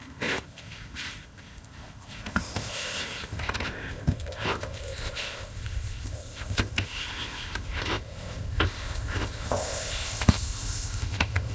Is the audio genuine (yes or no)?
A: no